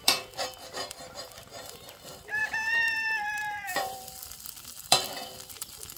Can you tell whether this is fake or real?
fake